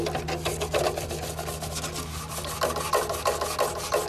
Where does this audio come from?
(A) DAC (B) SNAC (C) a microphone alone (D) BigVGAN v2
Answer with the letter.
C